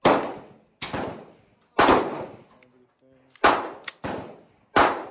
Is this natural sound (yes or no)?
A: yes